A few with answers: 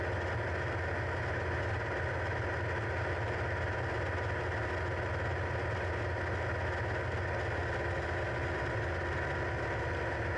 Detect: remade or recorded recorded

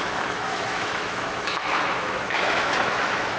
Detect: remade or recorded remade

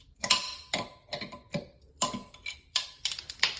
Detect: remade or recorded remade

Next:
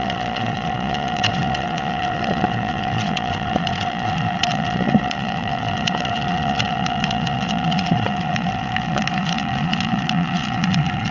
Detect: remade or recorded remade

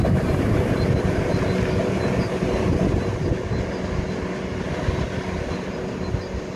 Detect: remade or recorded recorded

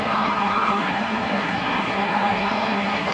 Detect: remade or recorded remade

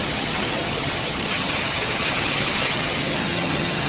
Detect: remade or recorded remade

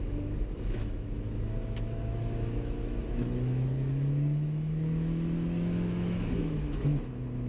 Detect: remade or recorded remade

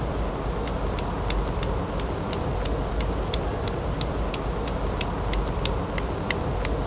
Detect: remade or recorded recorded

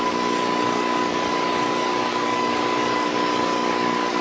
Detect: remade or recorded remade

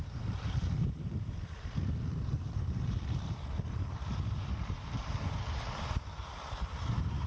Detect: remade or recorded remade